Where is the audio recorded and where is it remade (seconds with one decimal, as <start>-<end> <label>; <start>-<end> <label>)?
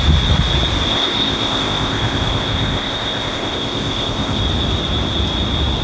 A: 0.0-0.9 recorded; 0.9-4.4 remade; 4.4-5.8 recorded